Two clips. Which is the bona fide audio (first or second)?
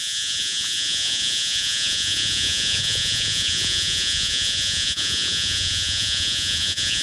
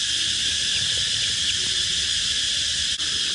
second